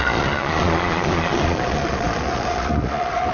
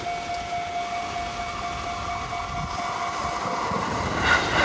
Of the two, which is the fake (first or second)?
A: first